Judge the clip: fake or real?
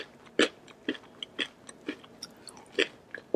real